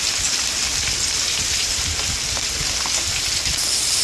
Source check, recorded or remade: recorded